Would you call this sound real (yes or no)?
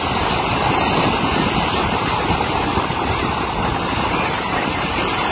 no